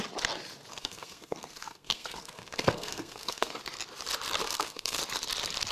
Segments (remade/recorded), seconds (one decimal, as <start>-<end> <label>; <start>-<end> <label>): 0.0-0.7 recorded; 0.7-3.6 remade; 3.6-4.4 recorded; 4.4-5.0 remade; 5.0-5.7 recorded